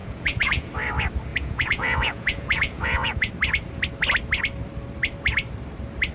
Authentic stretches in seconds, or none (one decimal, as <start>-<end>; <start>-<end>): 0.7-1.3; 3.3-6.1